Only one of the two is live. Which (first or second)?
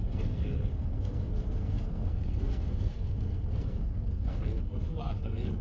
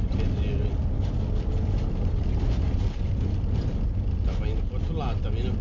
second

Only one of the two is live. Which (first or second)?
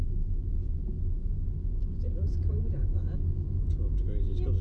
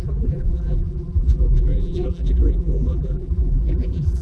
first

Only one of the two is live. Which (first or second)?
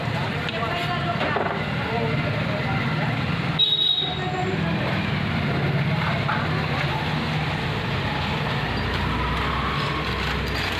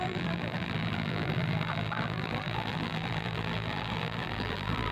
first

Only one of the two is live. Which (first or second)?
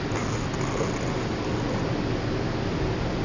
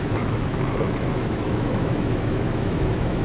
first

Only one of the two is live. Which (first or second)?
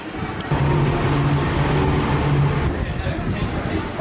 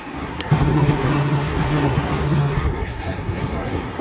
first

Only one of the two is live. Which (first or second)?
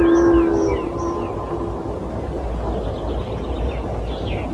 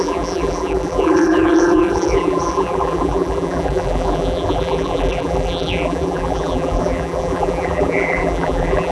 first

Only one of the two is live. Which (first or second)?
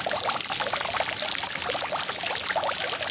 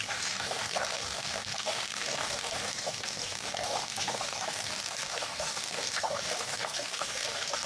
first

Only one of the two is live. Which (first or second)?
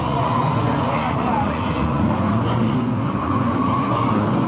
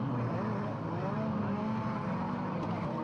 second